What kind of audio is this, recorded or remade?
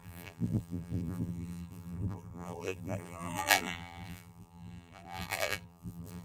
remade